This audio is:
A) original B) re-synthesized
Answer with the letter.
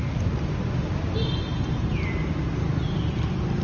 A